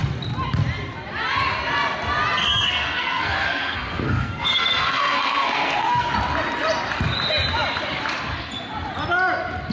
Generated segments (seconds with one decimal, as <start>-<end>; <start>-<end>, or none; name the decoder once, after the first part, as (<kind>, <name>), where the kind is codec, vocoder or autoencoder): 2.4-6.1 (codec, SNAC)